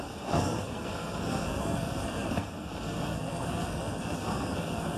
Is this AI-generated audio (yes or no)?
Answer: yes